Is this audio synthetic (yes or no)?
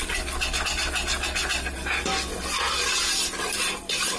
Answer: no